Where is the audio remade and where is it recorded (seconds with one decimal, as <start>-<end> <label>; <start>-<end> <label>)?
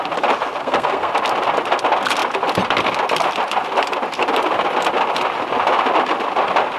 0.0-0.6 recorded; 0.6-1.1 remade; 1.1-6.8 recorded